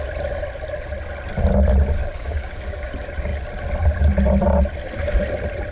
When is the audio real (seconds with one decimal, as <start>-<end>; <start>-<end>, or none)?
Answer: 0.0-2.0; 2.9-5.7